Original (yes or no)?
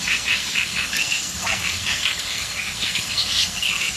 no